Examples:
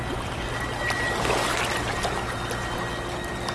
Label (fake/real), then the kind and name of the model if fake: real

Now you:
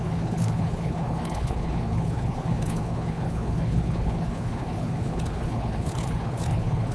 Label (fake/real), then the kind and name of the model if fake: fake, codec, HILCodec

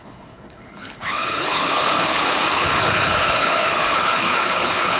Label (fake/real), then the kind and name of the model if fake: fake, codec, HILCodec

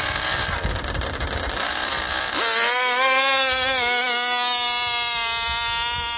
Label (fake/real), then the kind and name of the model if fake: real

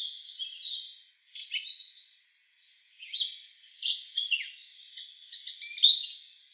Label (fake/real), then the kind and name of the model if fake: real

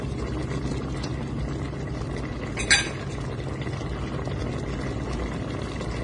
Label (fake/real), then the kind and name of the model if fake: real